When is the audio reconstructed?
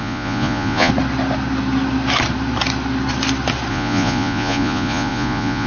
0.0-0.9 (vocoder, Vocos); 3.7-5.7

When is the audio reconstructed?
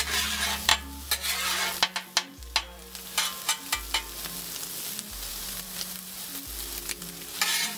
0.0-0.7 (vocoder, BigVGAN v2); 5.3-6.3; 7.0-7.8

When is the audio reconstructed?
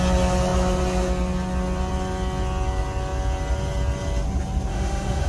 4.7-5.3 (autoencoder, DAC-VAE)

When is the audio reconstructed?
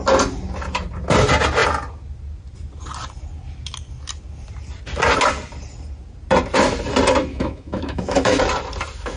7.3-8.4 (autoencoder, DAC-VAE)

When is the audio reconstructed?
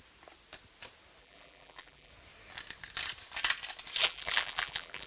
1.2-2.1 (vocoder, BigVGAN v2); 4.0-5.1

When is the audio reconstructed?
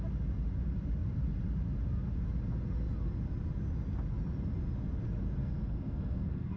5.4-6.6 (codec, SNAC)